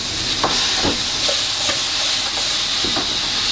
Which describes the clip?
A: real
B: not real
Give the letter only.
A